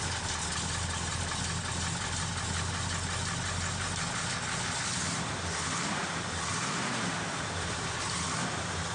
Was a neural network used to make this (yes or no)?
no